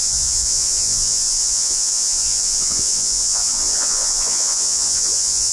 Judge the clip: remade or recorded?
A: remade